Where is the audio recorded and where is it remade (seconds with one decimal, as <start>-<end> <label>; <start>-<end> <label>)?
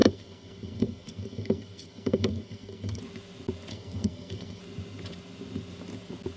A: 0.0-3.0 remade; 3.0-3.7 recorded; 3.7-4.6 remade; 4.6-6.4 recorded